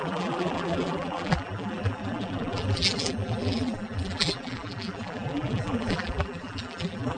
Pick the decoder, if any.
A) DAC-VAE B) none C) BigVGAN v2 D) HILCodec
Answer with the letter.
C